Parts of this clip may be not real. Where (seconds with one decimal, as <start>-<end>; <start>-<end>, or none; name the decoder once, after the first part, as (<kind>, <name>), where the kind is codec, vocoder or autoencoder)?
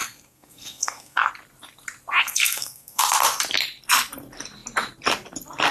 0.0-1.3 (codec, SNAC); 2.2-3.0